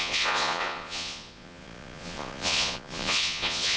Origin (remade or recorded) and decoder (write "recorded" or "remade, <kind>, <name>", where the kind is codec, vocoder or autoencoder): remade, vocoder, Vocos